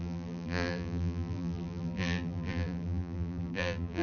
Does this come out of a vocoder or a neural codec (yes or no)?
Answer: yes